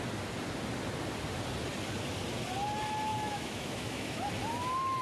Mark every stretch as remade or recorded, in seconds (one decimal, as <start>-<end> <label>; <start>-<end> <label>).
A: 0.0-3.1 recorded; 3.1-4.3 remade; 4.3-5.0 recorded